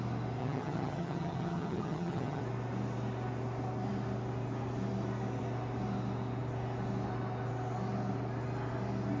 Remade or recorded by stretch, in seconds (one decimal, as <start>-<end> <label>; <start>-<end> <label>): 0.0-0.4 recorded; 0.4-2.4 remade; 2.4-9.2 recorded